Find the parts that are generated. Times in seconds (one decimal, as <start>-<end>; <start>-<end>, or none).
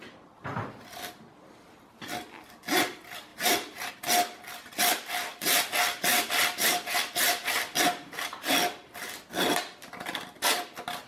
3.3-3.9